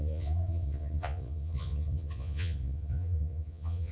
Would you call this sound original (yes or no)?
no